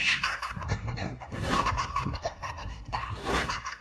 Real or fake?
fake